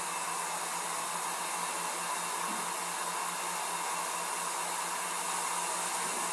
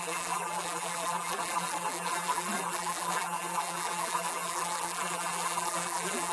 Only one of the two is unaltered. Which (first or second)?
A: first